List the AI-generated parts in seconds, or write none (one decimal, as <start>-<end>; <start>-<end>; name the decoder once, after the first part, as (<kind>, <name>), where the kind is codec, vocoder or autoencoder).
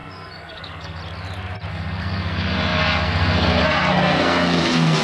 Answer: 0.0-1.0 (codec, SNAC); 1.7-5.0